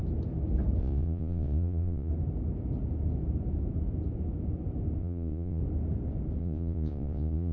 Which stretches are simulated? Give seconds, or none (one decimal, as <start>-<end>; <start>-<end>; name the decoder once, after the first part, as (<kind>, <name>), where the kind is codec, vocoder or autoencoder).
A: 0.8-2.1 (vocoder, Vocos); 5.0-5.6; 6.4-7.5